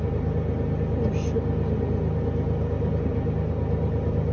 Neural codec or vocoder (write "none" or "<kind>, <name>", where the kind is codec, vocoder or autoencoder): none